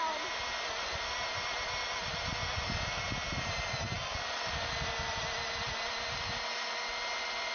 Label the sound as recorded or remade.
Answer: recorded